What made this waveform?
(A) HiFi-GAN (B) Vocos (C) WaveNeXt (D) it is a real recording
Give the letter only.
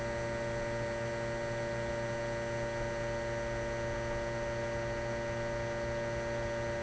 D